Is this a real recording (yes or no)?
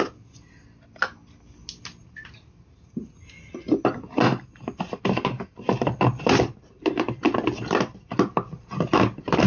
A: yes